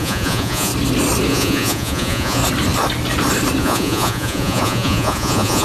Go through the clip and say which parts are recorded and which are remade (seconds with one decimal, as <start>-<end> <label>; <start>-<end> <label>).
0.0-0.7 remade; 0.7-1.3 recorded; 1.3-2.4 remade; 2.4-3.6 recorded; 3.6-5.6 remade